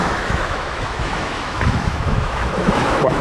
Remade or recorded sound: remade